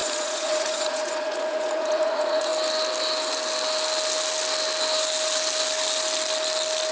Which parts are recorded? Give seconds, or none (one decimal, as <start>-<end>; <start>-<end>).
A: 2.5-6.9